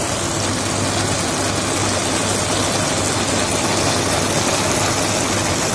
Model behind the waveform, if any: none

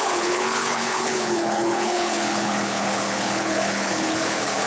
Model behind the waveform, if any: codec, HILCodec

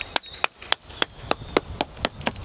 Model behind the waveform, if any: none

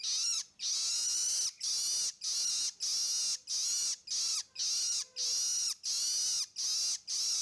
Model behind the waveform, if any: none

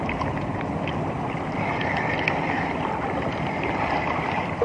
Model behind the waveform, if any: none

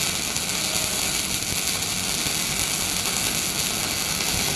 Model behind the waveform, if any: none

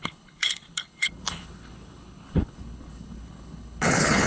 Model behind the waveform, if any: codec, HILCodec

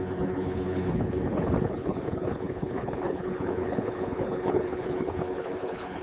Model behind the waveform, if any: codec, HILCodec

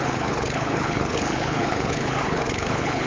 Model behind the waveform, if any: codec, HILCodec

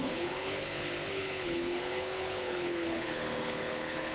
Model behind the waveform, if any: codec, HILCodec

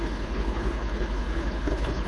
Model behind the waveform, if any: codec, HILCodec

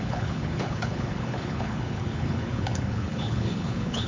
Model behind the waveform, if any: codec, HILCodec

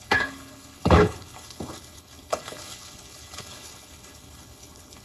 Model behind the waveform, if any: codec, HILCodec